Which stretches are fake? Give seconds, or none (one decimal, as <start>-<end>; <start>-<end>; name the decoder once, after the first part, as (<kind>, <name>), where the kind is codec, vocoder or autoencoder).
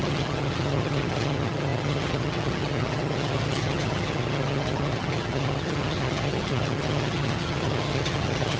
0.0-8.6 (vocoder, HiFi-GAN)